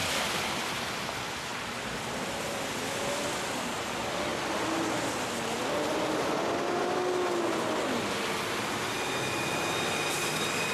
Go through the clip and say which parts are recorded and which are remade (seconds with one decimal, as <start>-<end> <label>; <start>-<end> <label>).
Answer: 0.0-10.7 recorded